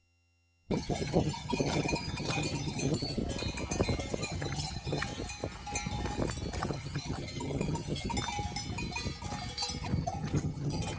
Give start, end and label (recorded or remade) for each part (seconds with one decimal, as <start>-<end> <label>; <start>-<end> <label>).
0.0-3.2 remade; 3.2-4.1 recorded; 4.1-5.1 remade; 5.1-6.6 recorded; 6.6-8.1 remade; 8.1-10.0 recorded; 10.0-11.0 remade